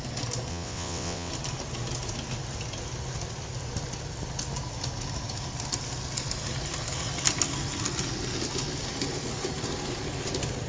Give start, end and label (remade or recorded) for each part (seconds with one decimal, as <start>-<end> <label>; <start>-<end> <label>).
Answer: 0.0-0.5 recorded; 0.5-1.3 remade; 1.3-10.7 recorded